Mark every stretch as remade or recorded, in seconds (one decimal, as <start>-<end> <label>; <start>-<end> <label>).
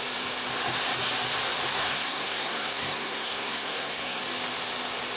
0.0-1.7 recorded; 1.7-4.2 remade; 4.2-5.2 recorded